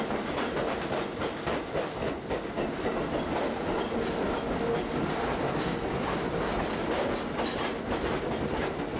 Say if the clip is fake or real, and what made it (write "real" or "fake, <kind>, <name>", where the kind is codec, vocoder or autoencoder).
real